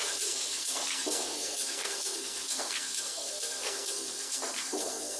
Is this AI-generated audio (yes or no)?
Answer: yes